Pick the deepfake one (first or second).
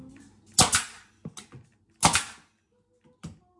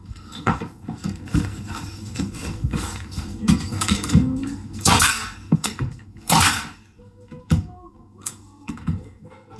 second